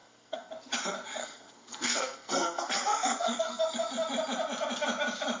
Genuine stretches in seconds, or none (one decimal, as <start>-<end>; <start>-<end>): 0.5-1.2; 3.6-5.4